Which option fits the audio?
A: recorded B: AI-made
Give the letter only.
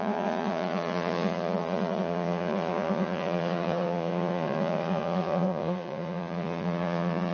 B